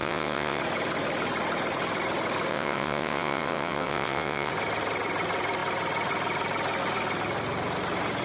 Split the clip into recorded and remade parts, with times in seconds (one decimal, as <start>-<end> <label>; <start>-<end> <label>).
0.0-0.6 remade; 0.6-2.5 recorded; 2.5-4.5 remade; 4.5-8.2 recorded